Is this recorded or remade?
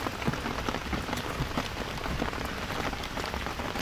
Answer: recorded